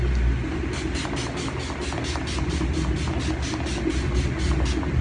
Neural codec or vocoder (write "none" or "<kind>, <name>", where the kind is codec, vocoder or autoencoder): none